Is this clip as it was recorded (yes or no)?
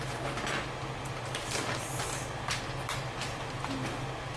yes